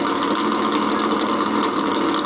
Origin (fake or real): real